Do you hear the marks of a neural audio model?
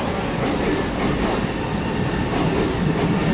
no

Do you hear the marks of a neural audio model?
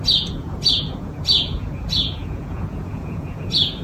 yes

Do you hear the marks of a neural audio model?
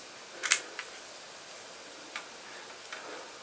no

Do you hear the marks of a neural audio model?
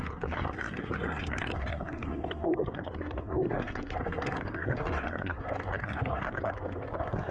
yes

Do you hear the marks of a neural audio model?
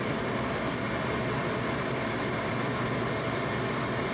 yes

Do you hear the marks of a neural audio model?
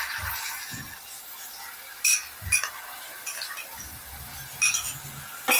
no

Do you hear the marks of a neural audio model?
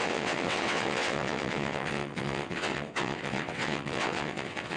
yes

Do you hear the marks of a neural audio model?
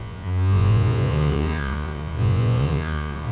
yes